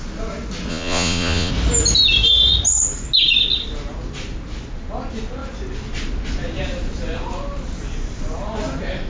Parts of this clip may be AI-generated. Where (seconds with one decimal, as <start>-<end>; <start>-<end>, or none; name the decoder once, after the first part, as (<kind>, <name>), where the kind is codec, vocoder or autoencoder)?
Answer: 0.7-1.5 (vocoder, Vocos)